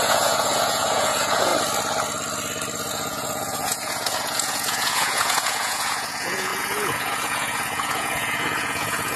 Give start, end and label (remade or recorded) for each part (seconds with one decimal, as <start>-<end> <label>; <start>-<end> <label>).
0.0-1.5 remade; 1.5-2.9 recorded; 2.9-9.2 remade